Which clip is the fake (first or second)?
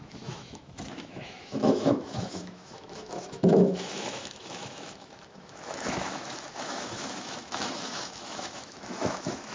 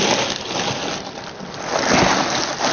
first